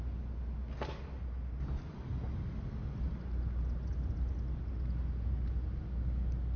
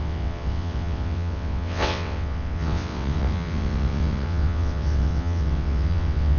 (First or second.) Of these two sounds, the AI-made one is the second